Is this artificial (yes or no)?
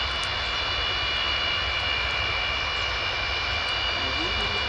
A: no